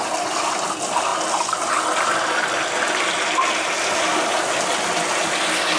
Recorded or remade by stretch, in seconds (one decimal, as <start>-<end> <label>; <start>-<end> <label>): 0.0-5.8 recorded